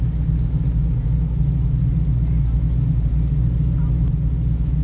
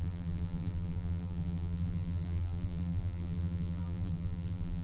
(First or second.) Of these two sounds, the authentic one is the first